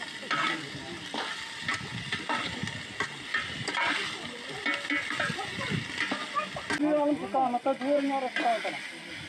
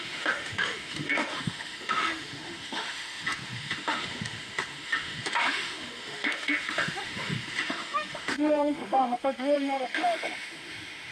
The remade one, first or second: second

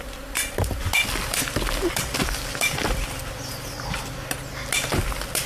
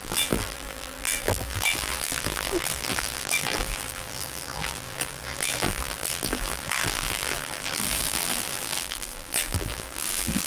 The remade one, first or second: second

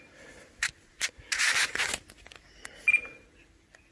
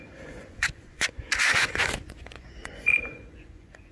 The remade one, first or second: second